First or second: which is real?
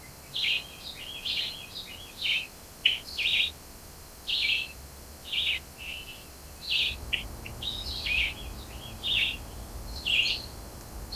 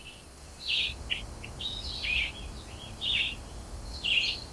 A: first